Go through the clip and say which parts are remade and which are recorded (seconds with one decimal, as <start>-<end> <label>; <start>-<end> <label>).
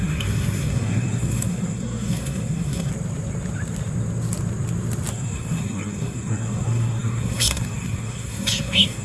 0.0-2.9 remade; 2.9-5.1 recorded; 5.1-9.0 remade